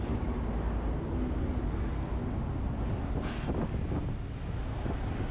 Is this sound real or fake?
real